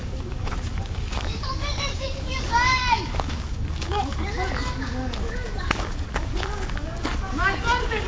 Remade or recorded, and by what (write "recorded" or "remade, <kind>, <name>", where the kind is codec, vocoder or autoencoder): remade, codec, DAC